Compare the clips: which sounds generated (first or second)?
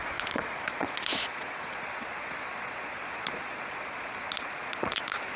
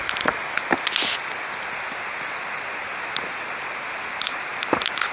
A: first